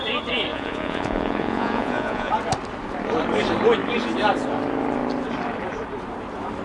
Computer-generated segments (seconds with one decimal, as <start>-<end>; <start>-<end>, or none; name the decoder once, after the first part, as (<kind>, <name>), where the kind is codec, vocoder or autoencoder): 0.5-2.3 (vocoder, Vocos)